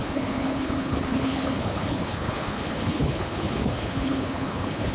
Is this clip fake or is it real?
fake